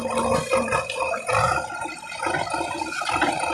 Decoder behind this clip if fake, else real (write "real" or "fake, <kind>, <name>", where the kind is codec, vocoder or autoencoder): real